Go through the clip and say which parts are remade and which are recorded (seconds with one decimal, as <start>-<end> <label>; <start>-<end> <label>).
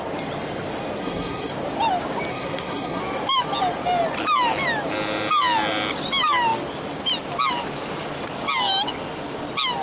0.0-1.0 recorded; 1.0-1.5 remade; 1.5-2.3 recorded; 2.3-3.0 remade; 3.0-9.8 recorded